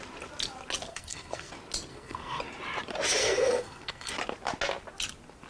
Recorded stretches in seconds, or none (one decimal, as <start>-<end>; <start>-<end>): 0.0-0.9; 1.5-1.9; 2.4-3.2; 4.1-5.5